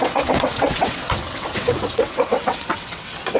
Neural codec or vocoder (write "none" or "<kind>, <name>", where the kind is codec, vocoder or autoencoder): vocoder, WaveNeXt